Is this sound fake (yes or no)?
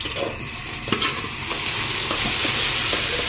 yes